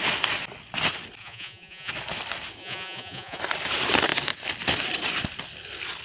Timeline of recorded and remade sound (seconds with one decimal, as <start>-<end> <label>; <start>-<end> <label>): 0.0-1.2 recorded; 1.2-1.9 remade; 1.9-2.6 recorded; 2.6-3.4 remade; 3.4-6.0 recorded